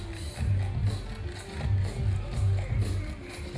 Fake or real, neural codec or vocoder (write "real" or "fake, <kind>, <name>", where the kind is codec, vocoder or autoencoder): real